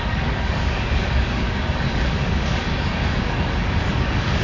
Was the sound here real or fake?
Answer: fake